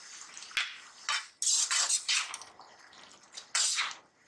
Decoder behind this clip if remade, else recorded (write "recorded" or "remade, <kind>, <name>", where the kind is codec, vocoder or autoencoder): recorded